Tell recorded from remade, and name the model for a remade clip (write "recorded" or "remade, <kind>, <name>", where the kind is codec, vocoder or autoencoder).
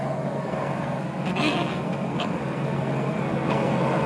remade, codec, SNAC